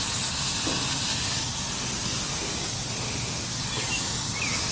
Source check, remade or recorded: recorded